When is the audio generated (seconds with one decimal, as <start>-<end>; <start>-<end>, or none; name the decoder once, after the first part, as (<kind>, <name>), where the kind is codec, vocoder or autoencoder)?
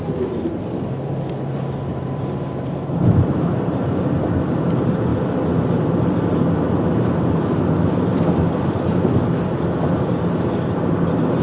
1.9-4.1 (vocoder, BigVGAN v2)